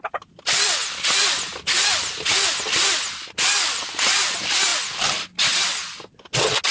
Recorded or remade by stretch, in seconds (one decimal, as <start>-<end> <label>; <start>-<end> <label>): 0.0-6.7 recorded